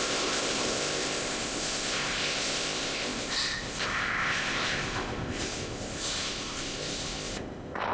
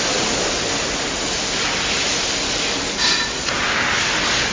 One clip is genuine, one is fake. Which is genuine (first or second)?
second